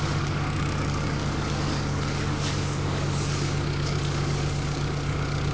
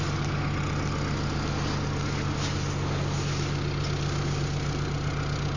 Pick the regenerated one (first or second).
first